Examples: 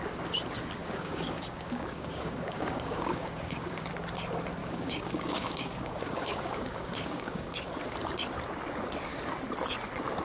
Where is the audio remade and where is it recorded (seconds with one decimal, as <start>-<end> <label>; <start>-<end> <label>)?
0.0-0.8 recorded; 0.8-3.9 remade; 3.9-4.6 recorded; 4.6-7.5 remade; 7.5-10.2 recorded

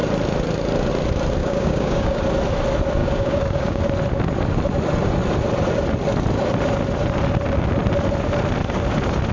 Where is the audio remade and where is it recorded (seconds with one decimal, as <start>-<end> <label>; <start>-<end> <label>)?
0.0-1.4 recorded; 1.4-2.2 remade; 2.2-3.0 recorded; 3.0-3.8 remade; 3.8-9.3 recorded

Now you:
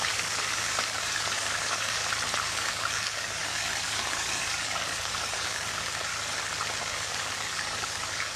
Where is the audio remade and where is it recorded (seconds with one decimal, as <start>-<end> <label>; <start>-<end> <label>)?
0.0-2.0 remade; 2.0-2.5 recorded; 2.5-6.1 remade; 6.1-6.8 recorded; 6.8-8.4 remade

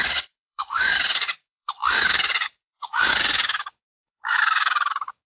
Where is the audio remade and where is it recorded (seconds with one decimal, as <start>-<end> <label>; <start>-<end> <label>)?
0.0-5.3 remade

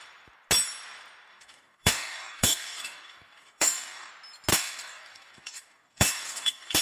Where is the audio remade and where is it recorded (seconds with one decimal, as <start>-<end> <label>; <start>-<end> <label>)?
0.0-1.3 recorded; 1.3-4.1 remade; 4.1-4.5 recorded; 4.5-6.8 remade